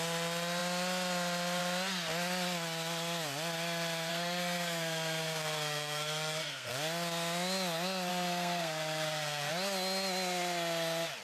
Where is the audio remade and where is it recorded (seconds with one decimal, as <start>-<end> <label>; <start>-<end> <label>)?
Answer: 0.0-4.1 recorded; 4.1-6.7 remade; 6.7-8.1 recorded; 8.1-9.5 remade; 9.5-11.2 recorded